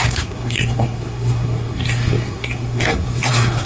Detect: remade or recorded remade